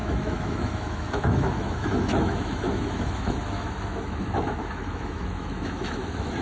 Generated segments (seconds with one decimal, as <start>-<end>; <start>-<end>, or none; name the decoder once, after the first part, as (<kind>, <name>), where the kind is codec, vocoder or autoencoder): 0.0-6.4 (autoencoder, DAC-VAE)